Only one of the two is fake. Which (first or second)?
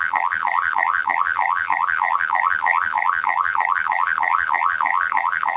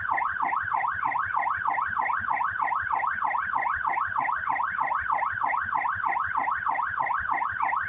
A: first